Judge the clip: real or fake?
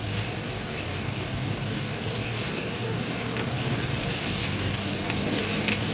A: fake